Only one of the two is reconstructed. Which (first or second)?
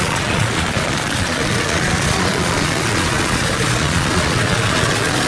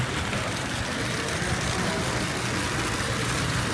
first